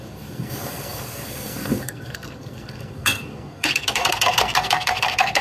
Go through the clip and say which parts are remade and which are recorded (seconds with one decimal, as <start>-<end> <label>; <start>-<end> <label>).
0.0-5.4 remade